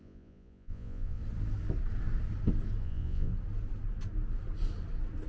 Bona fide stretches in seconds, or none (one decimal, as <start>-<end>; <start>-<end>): 1.2-2.8; 3.3-5.3